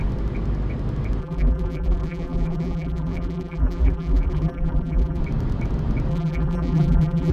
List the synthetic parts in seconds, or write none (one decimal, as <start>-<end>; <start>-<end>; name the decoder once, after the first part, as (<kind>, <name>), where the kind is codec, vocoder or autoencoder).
1.2-5.2 (vocoder, BigVGAN v2); 6.1-7.3